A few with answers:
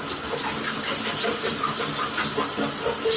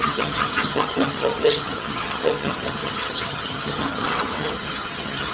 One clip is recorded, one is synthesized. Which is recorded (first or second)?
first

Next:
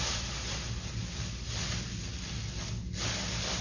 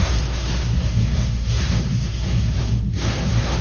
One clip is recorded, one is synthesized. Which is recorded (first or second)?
first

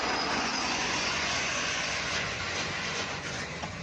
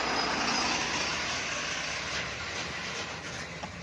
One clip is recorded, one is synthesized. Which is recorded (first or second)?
second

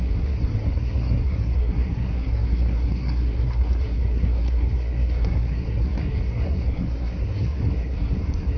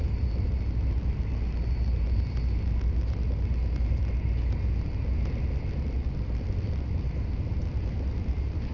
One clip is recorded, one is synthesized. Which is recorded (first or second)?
second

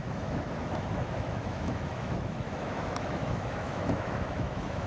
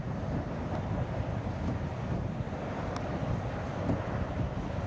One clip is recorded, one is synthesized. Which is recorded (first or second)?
second